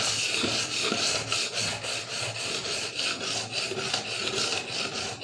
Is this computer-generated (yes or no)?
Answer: no